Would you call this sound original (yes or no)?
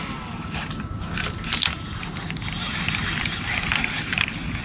yes